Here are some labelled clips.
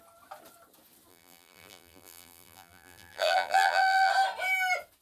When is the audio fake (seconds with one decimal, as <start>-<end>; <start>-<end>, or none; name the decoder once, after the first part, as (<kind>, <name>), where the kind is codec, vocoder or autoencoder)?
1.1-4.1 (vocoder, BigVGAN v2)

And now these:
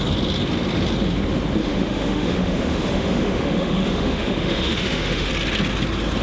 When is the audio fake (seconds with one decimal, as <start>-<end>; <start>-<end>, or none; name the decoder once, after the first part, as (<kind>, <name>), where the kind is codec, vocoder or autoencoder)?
1.6-5.3 (autoencoder, DAC-VAE)

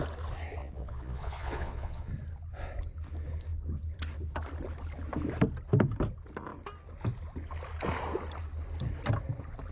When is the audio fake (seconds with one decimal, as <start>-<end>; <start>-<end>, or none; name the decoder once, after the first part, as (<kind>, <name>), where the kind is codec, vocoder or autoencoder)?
0.6-2.1 (vocoder, Vocos)

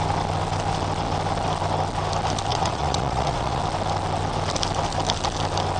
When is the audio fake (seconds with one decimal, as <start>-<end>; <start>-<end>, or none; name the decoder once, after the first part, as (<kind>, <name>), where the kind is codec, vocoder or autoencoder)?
2.5-3.6 (vocoder, WaveNeXt)

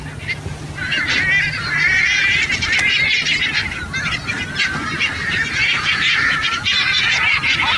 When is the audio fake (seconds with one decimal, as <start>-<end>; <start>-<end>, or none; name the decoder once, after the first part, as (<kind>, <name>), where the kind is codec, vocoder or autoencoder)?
5.6-7.8 (vocoder, Vocos)